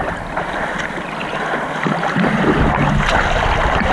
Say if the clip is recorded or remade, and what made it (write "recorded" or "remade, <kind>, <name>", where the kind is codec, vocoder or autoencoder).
recorded